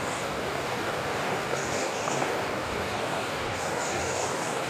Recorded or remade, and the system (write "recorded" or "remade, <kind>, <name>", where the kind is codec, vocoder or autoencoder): remade, codec, DAC